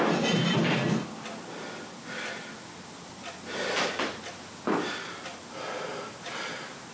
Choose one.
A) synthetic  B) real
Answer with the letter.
B